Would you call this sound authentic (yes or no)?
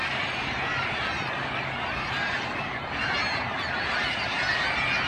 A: yes